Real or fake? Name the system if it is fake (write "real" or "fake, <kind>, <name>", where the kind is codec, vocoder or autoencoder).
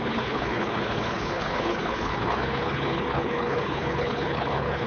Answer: fake, codec, HILCodec